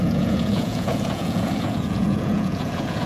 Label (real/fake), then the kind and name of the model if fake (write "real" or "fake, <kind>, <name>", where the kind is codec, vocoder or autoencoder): fake, vocoder, Vocos